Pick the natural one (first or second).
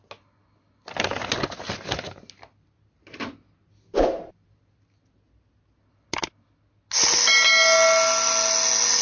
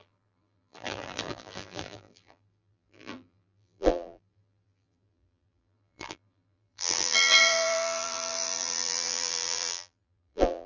first